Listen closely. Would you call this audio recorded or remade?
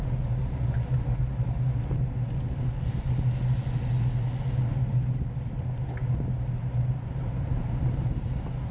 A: recorded